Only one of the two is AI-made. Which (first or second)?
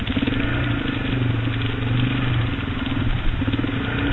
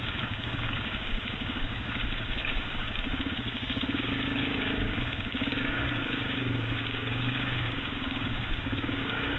second